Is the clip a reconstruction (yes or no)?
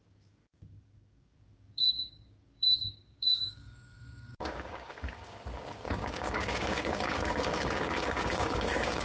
yes